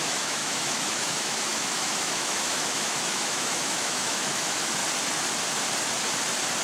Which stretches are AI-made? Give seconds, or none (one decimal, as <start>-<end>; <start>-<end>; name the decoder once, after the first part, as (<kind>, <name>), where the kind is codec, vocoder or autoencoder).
0.0-4.8 (autoencoder, DAC-VAE)